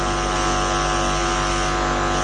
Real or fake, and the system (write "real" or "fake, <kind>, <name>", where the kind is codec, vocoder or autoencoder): real